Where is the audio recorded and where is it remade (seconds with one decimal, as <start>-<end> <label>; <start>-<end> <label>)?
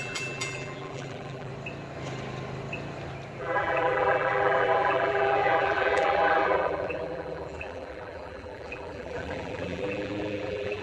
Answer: 0.0-1.5 remade; 1.5-3.4 recorded; 3.4-10.8 remade